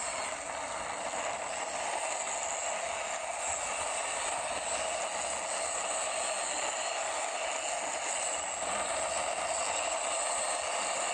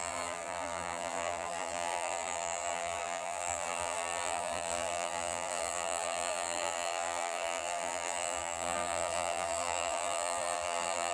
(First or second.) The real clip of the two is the first